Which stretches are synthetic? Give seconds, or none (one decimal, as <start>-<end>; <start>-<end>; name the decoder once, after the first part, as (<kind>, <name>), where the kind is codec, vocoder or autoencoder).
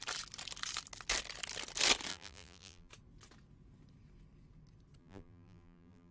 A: 2.1-2.9 (vocoder, BigVGAN v2); 5.0-6.1